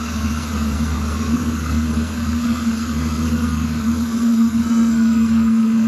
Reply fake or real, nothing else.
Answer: fake